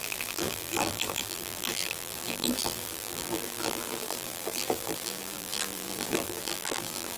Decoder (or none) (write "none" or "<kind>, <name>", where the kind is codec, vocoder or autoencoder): vocoder, BigVGAN v2